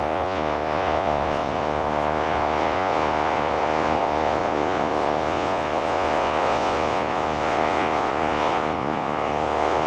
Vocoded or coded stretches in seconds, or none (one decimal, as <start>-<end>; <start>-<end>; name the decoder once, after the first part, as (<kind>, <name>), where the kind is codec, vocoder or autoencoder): 0.0-9.9 (vocoder, Vocos)